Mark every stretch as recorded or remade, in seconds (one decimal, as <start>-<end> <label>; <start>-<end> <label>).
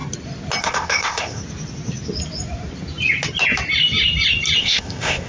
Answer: 0.0-0.6 recorded; 0.6-1.4 remade; 1.4-4.6 recorded; 4.6-5.3 remade